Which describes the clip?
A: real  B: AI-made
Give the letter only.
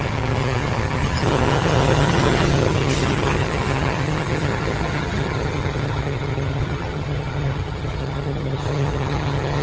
B